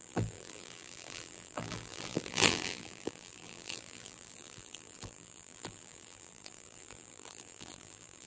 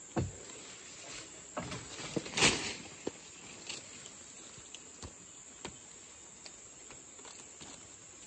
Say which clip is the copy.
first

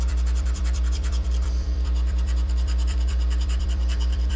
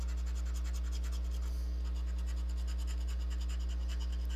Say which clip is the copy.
first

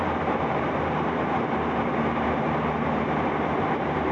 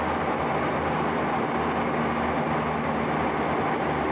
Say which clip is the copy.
first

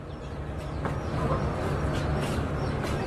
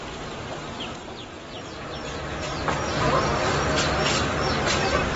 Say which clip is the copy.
first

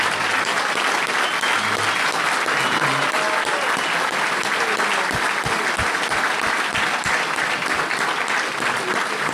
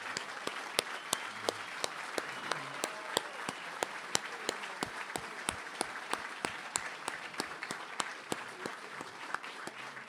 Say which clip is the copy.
second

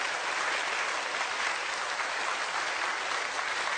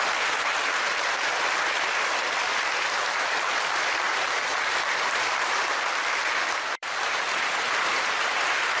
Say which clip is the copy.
second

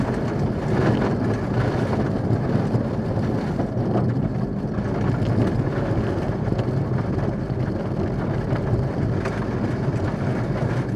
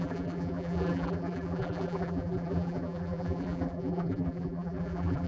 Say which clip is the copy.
second